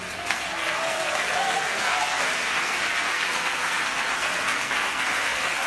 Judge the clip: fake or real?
fake